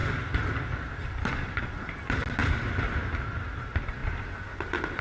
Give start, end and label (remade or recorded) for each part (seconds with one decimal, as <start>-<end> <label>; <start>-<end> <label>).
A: 0.0-5.0 recorded